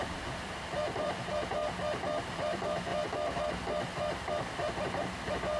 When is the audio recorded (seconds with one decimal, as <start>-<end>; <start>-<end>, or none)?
1.6-2.3; 2.9-4.3